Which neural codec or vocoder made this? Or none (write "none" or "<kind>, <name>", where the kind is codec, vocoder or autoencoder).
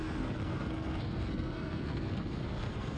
codec, SNAC